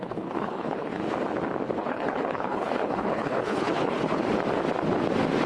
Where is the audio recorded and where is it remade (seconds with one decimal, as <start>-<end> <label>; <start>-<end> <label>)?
0.0-1.0 remade; 1.0-1.8 recorded; 1.8-4.2 remade; 4.2-5.5 recorded